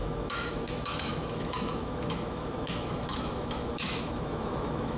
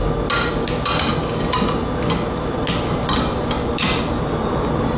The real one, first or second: second